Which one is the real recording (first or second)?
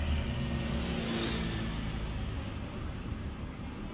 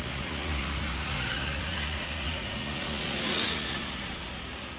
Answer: first